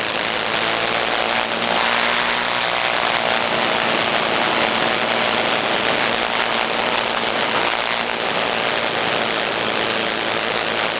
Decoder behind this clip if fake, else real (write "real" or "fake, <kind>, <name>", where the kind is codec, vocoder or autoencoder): real